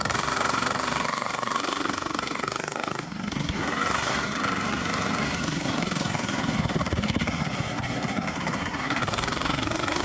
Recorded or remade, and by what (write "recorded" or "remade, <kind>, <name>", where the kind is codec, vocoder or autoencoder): remade, codec, SNAC